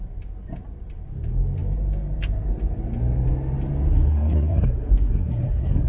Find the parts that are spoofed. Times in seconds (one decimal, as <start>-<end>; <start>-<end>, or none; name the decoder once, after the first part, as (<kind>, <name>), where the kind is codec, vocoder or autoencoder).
3.9-5.9 (codec, SNAC)